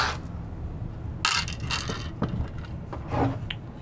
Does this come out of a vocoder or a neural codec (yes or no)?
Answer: no